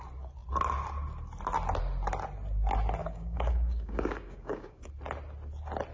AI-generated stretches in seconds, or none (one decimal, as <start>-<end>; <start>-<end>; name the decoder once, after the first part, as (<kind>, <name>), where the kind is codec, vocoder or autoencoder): 3.0-4.9 (codec, DAC)